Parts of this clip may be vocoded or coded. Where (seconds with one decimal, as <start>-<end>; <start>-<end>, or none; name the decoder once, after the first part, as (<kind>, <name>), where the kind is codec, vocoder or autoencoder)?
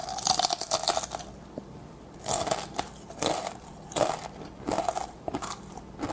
none